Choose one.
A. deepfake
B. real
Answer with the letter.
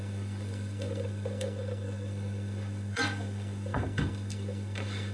A